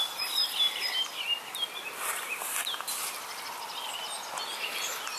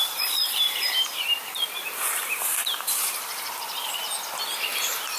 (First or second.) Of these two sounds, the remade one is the second